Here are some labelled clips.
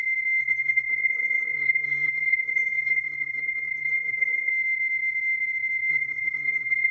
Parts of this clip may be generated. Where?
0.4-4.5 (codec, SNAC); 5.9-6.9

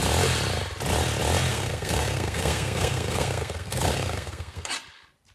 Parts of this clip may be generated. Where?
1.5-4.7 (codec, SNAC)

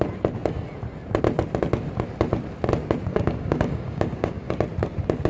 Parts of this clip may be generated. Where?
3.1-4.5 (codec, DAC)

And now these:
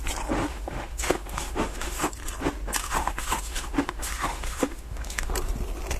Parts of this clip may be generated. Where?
0.5-2.1 (autoencoder, DAC-VAE); 2.8-5.3

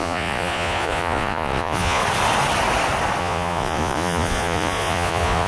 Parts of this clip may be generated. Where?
0.0-2.0 (vocoder, Vocos); 3.2-5.5

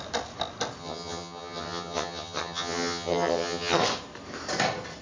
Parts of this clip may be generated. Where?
0.8-3.8 (vocoder, HiFi-GAN)